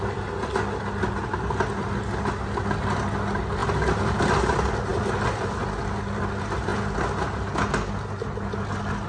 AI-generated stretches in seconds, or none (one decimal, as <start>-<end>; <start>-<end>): none